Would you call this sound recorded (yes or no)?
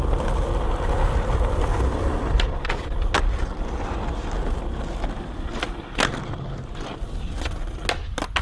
yes